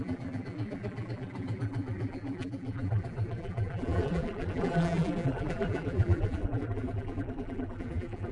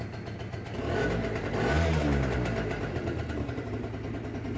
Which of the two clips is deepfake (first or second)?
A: first